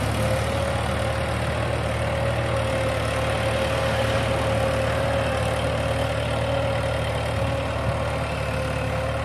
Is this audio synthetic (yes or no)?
no